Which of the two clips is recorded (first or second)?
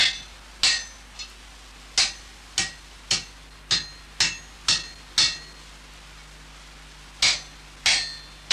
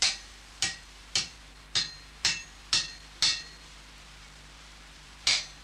first